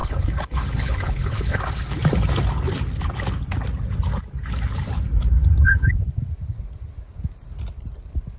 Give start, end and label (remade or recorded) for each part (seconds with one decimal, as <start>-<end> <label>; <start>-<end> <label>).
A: 0.0-1.6 remade; 1.6-5.4 recorded; 5.4-6.2 remade; 6.2-8.4 recorded